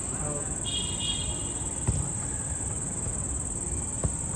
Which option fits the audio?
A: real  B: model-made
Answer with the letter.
A